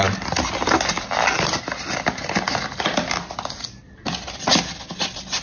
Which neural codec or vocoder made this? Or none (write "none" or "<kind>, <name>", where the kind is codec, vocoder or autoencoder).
none